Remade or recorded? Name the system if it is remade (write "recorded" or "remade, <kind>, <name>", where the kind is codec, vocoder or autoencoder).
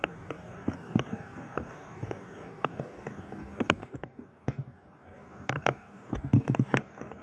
remade, codec, DAC